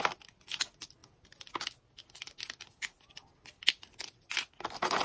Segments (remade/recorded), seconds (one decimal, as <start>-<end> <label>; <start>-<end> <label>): 0.0-5.0 recorded

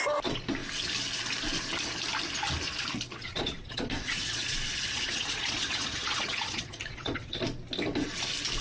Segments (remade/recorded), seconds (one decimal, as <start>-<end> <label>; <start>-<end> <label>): 0.0-3.2 recorded; 3.2-7.4 remade; 7.4-8.6 recorded

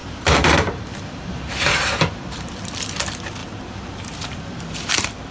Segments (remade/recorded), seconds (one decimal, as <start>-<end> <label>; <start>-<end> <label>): 0.0-2.1 remade; 2.1-3.4 recorded; 3.4-5.3 remade

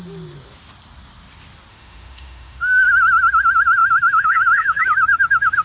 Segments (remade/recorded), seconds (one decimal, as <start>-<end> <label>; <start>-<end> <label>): 0.0-1.7 recorded; 1.7-2.9 remade; 2.9-3.8 recorded; 3.8-4.8 remade; 4.8-5.6 recorded

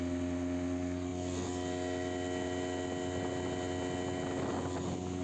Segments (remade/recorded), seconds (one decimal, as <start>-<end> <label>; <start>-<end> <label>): 0.0-5.2 recorded